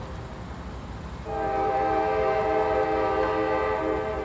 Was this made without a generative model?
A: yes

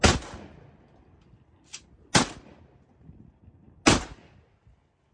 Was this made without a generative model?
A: yes